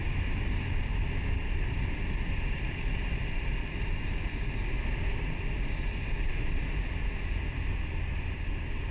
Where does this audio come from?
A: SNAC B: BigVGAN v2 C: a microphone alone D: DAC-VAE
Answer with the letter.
C